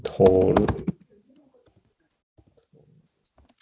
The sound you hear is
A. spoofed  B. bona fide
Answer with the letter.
B